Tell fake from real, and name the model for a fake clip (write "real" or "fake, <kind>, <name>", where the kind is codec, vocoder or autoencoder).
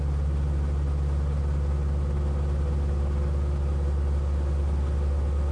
real